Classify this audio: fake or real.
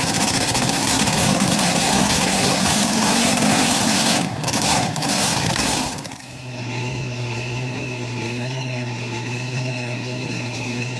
fake